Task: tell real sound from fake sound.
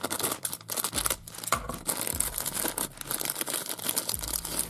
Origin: real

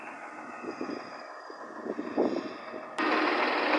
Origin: real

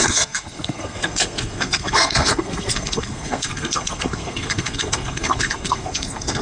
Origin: fake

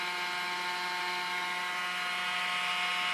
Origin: real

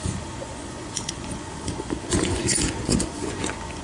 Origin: fake